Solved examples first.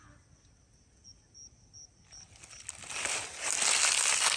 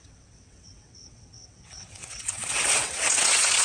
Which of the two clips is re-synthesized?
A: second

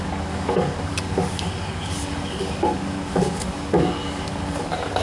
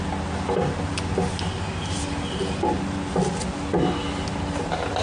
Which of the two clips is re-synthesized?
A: first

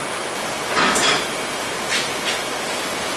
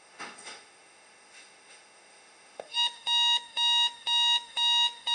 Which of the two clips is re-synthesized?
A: second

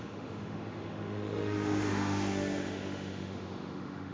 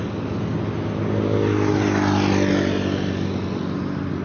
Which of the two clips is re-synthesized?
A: first